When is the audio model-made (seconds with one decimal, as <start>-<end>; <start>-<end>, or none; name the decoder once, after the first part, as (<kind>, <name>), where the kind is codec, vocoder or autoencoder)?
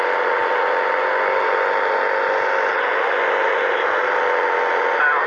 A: none